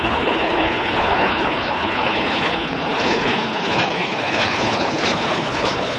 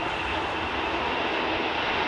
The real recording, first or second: second